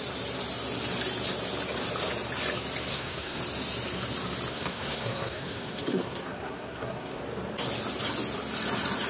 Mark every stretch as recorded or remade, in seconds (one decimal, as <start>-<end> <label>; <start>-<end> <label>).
0.0-2.9 recorded; 2.9-3.4 remade; 3.4-4.5 recorded; 4.5-7.2 remade; 7.2-9.1 recorded